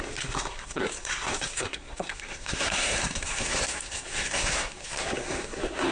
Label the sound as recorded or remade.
remade